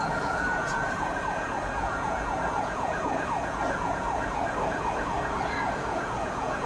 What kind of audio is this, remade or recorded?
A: remade